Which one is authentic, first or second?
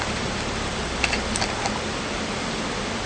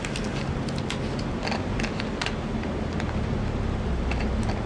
second